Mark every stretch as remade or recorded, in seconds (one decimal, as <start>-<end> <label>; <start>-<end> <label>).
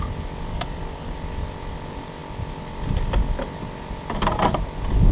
0.0-0.5 recorded; 0.5-1.1 remade; 1.1-5.1 recorded